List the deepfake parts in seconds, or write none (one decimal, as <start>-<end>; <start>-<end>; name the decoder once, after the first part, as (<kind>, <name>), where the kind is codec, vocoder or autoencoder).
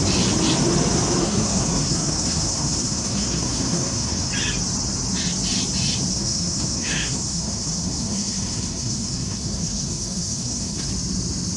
1.2-4.3 (codec, SNAC); 6.1-10.9